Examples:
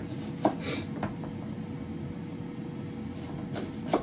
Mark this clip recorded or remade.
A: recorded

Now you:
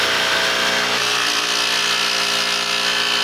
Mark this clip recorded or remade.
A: recorded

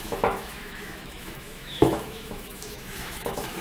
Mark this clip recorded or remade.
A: remade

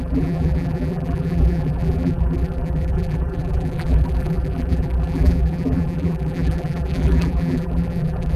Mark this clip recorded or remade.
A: remade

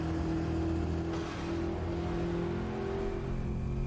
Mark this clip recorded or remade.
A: recorded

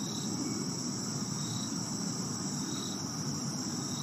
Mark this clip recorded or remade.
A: recorded